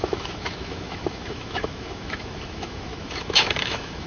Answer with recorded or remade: remade